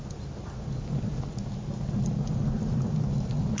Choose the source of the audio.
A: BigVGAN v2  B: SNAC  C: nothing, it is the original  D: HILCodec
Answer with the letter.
C